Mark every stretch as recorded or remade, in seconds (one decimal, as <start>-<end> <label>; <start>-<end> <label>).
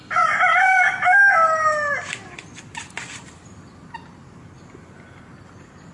0.0-0.6 recorded; 0.6-1.2 remade; 1.2-5.9 recorded